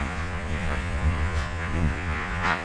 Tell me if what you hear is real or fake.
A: fake